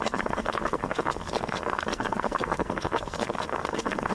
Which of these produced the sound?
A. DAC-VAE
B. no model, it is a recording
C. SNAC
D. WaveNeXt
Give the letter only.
C